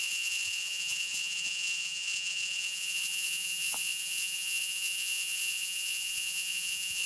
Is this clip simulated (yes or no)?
yes